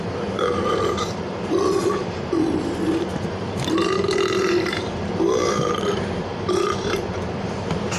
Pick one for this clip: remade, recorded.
remade